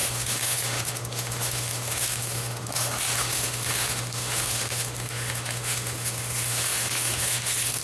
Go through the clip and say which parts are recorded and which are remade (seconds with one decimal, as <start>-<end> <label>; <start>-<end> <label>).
0.0-7.8 remade